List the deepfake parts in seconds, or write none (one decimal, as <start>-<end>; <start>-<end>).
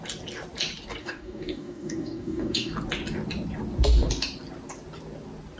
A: 1.0-2.7